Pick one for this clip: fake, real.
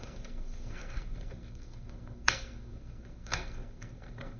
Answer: fake